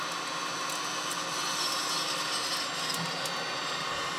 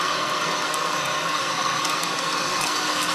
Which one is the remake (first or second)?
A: second